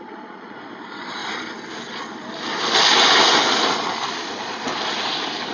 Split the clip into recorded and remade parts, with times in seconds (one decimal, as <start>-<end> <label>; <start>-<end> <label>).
0.0-1.2 remade; 1.2-4.3 recorded; 4.3-4.7 remade; 4.7-5.5 recorded